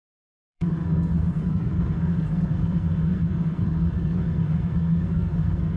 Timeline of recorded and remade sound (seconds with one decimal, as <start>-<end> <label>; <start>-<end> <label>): 0.0-5.8 remade